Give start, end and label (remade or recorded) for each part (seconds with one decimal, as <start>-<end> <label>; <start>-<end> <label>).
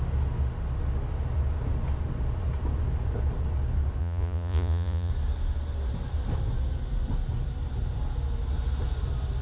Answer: 0.0-4.0 recorded; 4.0-5.1 remade; 5.1-9.4 recorded